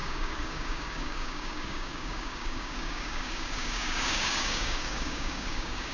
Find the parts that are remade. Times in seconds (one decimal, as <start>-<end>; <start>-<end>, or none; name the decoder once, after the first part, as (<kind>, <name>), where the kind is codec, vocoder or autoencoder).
0.0-5.9 (codec, DAC)

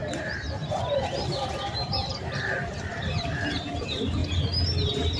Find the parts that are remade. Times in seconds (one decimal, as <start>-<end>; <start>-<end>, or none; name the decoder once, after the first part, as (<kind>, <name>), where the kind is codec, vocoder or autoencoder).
0.0-4.2 (vocoder, BigVGAN v2)

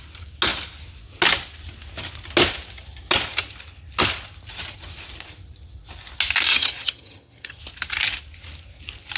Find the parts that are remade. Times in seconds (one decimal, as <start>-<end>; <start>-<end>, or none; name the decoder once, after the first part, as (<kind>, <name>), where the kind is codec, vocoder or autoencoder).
6.5-7.6 (vocoder, HiFi-GAN)

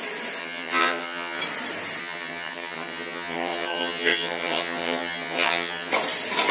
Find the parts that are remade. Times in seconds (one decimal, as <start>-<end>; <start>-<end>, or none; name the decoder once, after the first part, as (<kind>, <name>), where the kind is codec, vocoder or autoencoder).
0.4-1.4 (vocoder, HiFi-GAN); 2.0-5.9